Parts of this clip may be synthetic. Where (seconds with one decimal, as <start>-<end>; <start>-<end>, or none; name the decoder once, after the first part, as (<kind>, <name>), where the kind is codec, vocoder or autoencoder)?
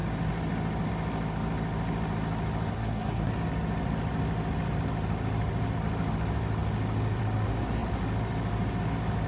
2.7-3.3 (codec, SNAC)